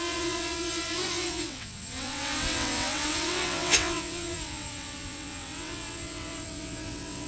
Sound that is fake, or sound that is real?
fake